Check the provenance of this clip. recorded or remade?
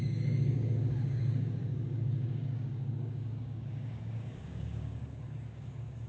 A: remade